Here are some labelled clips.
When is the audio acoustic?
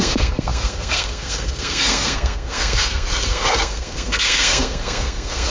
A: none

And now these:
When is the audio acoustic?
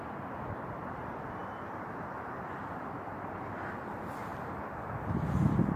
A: 0.0-5.8